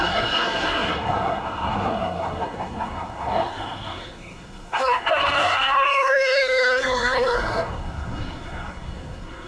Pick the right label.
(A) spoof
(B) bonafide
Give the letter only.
A